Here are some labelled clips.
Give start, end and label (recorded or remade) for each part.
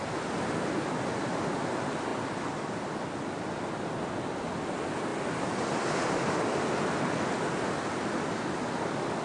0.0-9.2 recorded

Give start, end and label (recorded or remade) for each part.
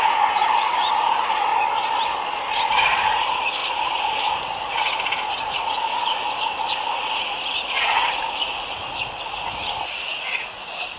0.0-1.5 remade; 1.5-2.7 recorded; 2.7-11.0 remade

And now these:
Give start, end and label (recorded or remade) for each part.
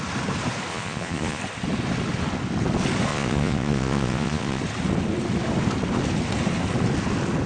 0.0-0.7 recorded; 0.7-1.4 remade; 1.4-3.1 recorded; 3.1-4.6 remade; 4.6-7.5 recorded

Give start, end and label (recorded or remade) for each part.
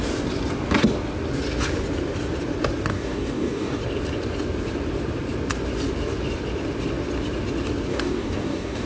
0.0-2.9 recorded; 2.9-3.8 remade; 3.8-7.9 recorded; 7.9-8.9 remade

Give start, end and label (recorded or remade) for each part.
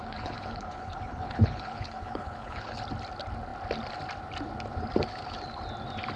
0.0-2.8 remade; 2.8-6.2 recorded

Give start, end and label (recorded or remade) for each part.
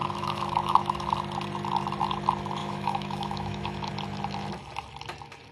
0.0-1.1 remade; 1.1-2.6 recorded; 2.6-3.9 remade; 3.9-5.5 recorded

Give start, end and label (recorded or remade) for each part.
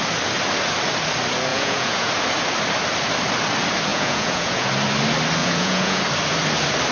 0.0-1.5 recorded; 1.5-2.1 remade; 2.1-3.9 recorded; 3.9-4.7 remade; 4.7-5.4 recorded; 5.4-6.0 remade; 6.0-6.9 recorded